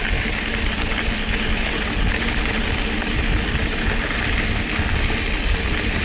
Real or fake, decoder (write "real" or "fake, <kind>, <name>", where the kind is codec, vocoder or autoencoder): real